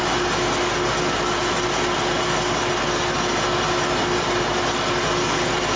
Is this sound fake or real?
real